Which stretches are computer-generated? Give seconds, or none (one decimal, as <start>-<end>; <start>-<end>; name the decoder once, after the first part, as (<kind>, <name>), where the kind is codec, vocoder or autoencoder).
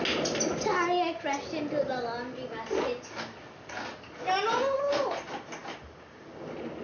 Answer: none